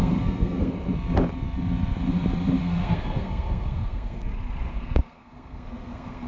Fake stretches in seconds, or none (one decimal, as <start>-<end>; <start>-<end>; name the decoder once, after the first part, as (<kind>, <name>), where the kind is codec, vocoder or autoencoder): 0.0-0.7 (codec, SNAC); 2.6-4.3; 4.7-6.3